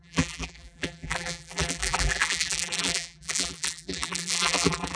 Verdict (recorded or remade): remade